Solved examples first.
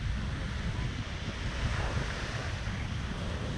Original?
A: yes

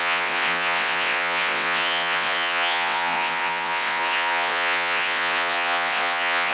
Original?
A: no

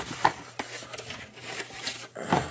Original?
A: yes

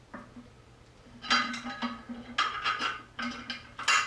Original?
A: yes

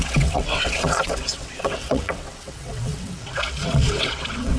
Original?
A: no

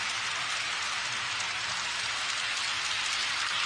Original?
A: yes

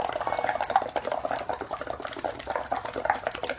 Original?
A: yes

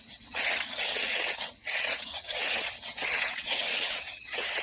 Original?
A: no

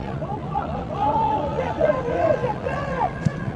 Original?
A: no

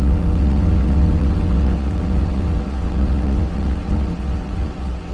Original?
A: no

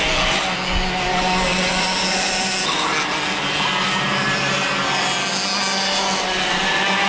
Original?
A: yes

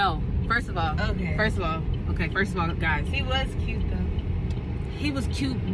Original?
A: yes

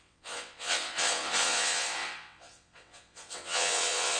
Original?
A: no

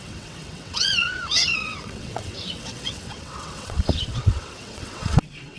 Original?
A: no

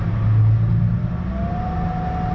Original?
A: yes